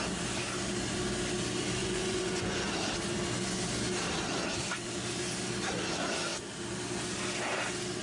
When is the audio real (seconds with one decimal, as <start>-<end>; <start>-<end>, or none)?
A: 0.0-1.8; 2.6-8.0